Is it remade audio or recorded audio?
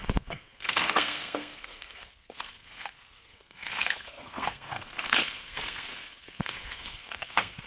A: remade